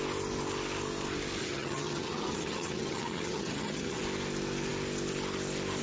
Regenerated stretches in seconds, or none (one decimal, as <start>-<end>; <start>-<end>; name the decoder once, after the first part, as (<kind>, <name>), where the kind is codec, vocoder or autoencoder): 1.4-4.0 (vocoder, HiFi-GAN)